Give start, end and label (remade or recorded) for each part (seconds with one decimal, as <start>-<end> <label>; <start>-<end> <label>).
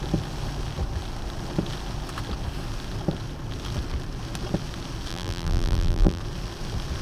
0.0-5.1 recorded; 5.1-6.2 remade; 6.2-7.0 recorded